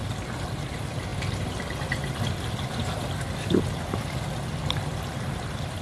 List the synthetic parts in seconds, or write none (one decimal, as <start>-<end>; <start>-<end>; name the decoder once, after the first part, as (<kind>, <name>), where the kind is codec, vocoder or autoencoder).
none